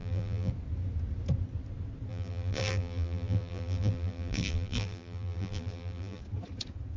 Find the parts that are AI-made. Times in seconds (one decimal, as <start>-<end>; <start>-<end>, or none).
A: 0.0-0.5; 2.1-6.2